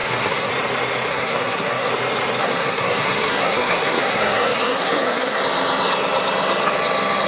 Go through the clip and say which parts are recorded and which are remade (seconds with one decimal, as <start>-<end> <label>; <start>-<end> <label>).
0.0-0.5 remade; 0.5-1.1 recorded; 1.1-1.9 remade; 1.9-2.4 recorded; 2.4-5.4 remade; 5.4-7.3 recorded